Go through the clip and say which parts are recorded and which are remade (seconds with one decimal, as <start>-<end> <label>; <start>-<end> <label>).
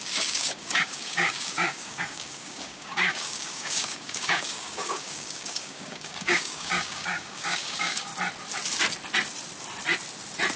0.0-8.1 remade; 8.1-10.6 recorded